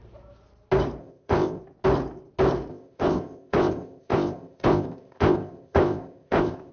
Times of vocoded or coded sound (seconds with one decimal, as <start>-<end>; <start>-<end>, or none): 1.0-1.6; 2.7-6.7